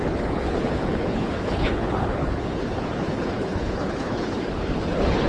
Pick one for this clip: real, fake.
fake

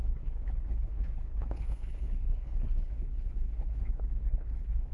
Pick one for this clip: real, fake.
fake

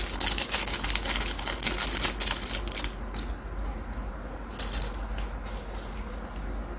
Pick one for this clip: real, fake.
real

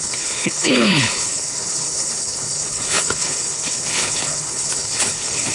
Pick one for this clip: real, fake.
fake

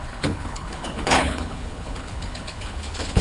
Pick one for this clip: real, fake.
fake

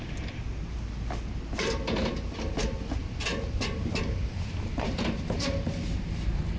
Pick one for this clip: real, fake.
real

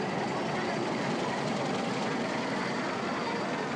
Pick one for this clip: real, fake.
real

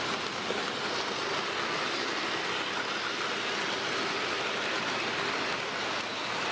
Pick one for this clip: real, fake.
real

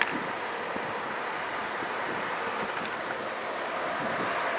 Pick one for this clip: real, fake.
real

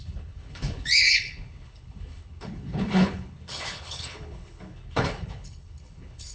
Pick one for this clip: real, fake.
fake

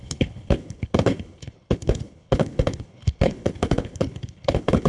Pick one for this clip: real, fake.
fake